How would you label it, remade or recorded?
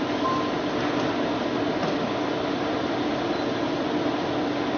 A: recorded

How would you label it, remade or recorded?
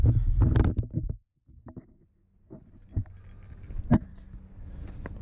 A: recorded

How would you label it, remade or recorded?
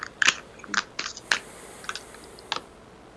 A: recorded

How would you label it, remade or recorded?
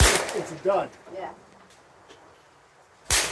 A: recorded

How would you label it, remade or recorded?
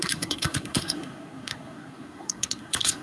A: remade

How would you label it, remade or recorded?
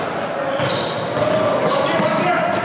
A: remade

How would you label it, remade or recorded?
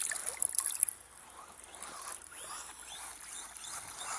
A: recorded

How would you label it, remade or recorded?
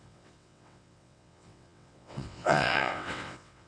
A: remade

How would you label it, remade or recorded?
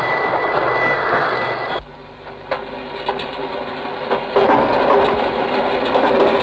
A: recorded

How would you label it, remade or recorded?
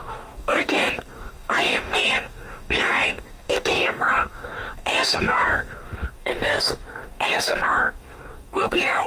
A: remade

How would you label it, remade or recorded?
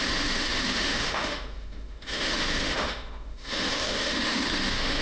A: remade